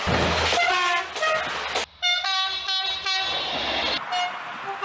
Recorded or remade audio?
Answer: recorded